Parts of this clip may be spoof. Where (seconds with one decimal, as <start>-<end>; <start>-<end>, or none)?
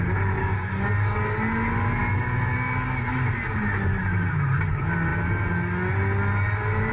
0.4-1.2